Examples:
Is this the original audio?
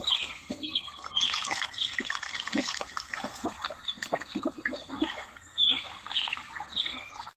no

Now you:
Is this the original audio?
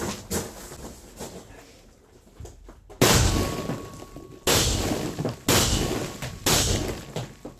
yes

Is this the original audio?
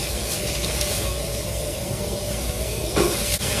no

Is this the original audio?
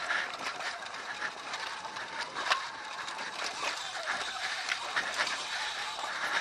no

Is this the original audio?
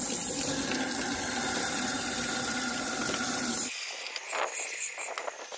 yes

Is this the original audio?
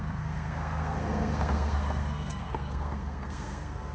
no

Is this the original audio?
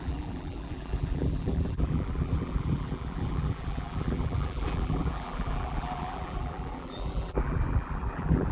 no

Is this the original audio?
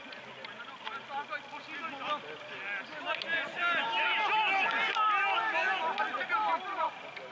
yes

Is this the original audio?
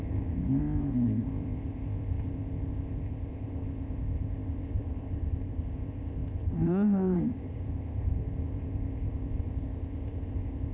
no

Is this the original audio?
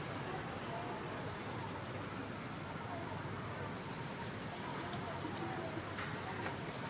yes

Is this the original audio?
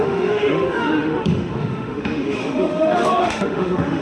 no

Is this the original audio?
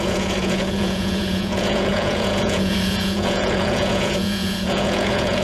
no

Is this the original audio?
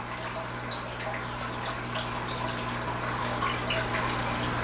yes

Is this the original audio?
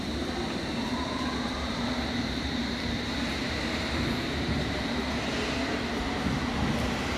no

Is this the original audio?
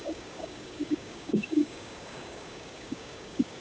no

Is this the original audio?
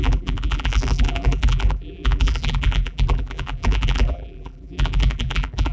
no